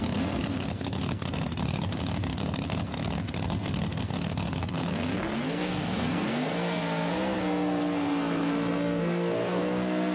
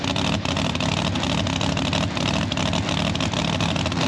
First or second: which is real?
second